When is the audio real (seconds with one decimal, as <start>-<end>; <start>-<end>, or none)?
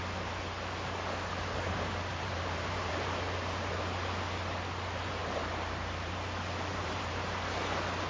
0.0-2.1; 2.9-5.2; 6.1-6.7; 7.3-8.1